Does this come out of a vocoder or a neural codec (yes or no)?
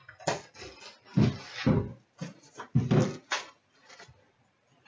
no